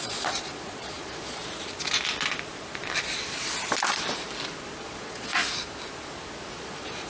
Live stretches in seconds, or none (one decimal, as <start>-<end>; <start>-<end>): 1.4-4.8; 5.4-6.6